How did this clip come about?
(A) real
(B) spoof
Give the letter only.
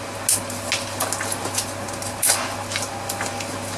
A